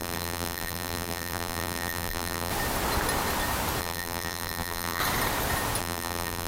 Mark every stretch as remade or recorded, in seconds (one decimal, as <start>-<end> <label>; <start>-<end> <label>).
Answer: 0.0-2.5 remade; 2.5-3.8 recorded; 3.8-5.0 remade; 5.0-5.8 recorded; 5.8-6.5 remade